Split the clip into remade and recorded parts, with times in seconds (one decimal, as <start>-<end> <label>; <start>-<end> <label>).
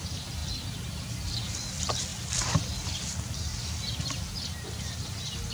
0.0-0.4 recorded; 0.4-1.5 remade; 1.5-2.1 recorded; 2.1-5.5 remade